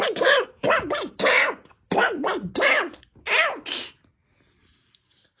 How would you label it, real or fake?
real